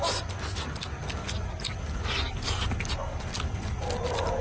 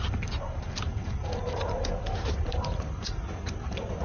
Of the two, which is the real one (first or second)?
first